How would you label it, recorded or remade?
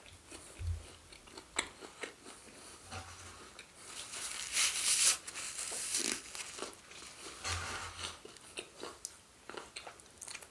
recorded